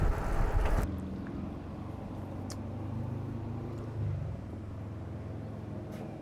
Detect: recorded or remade recorded